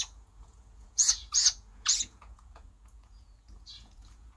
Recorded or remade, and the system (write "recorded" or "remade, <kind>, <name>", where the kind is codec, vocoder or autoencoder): remade, vocoder, Vocos